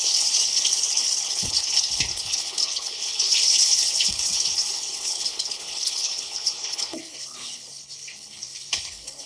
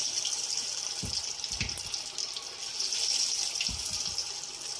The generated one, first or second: first